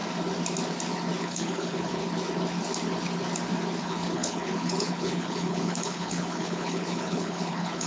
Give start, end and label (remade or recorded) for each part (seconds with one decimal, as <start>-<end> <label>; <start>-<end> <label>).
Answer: 0.0-1.2 recorded; 1.2-2.0 remade; 2.0-3.8 recorded; 3.8-7.9 remade